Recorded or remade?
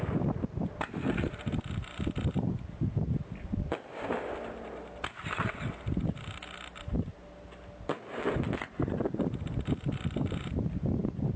recorded